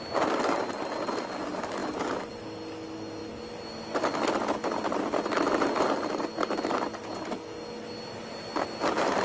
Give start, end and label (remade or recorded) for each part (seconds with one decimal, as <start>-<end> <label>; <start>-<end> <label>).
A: 0.0-9.2 recorded